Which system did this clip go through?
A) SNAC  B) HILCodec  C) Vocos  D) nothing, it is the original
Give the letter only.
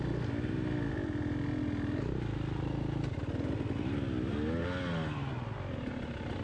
D